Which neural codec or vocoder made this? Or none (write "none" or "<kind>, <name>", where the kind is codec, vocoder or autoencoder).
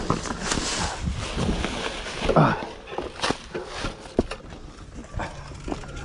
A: none